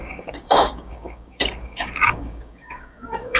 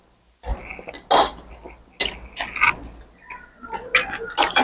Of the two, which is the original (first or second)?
second